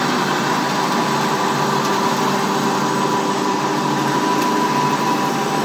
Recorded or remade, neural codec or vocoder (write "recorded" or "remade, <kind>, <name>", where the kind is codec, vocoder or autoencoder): recorded